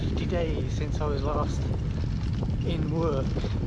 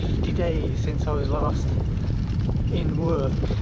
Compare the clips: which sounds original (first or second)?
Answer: first